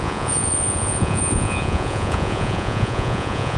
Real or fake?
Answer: fake